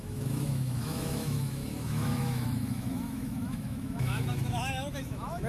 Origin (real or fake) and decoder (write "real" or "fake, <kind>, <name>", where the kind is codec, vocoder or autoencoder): fake, autoencoder, DAC-VAE